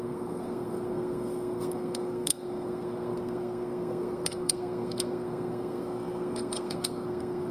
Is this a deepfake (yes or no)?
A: yes